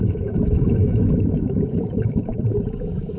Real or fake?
fake